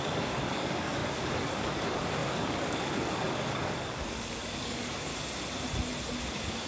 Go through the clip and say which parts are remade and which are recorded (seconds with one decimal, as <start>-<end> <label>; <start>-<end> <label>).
0.0-5.1 remade; 5.1-6.3 recorded; 6.3-6.7 remade

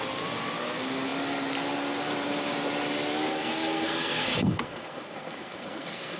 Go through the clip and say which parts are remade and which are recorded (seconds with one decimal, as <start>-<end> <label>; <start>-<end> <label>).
0.0-3.3 recorded; 3.3-6.2 remade